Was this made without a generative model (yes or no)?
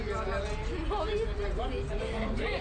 yes